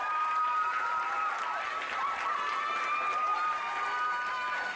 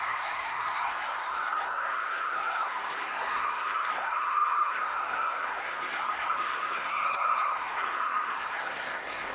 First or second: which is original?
first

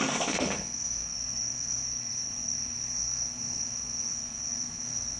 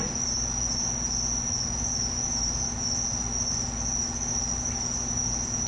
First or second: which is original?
second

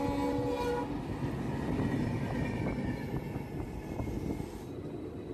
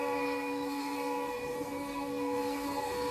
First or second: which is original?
first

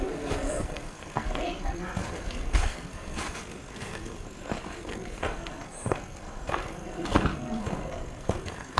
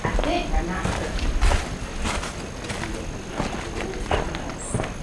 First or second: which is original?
second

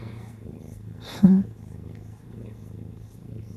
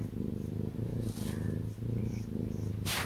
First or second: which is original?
second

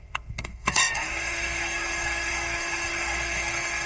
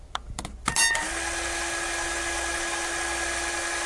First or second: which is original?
second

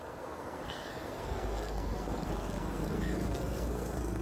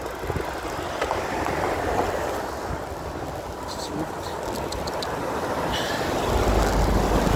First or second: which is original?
second